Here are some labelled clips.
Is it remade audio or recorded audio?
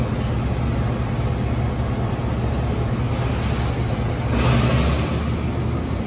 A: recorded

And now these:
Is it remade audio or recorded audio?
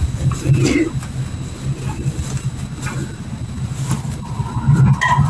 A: recorded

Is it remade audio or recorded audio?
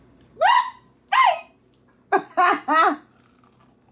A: recorded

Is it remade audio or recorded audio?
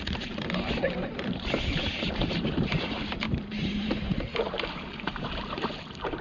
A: remade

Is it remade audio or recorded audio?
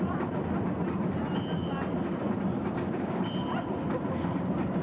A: recorded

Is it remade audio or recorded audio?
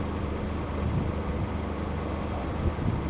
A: remade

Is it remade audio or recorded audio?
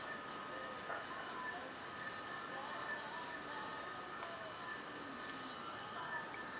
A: recorded